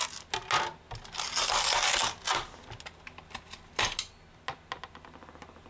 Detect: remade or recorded recorded